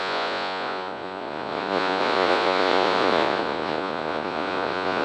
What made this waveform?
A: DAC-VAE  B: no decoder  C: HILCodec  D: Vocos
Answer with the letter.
D